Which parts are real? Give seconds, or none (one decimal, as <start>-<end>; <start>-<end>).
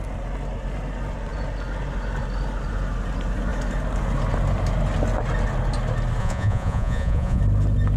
0.0-6.2; 7.4-8.0